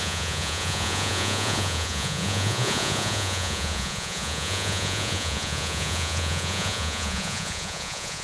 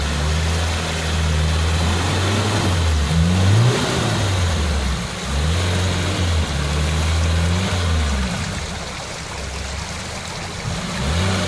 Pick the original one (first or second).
second